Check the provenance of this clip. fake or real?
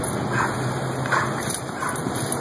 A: real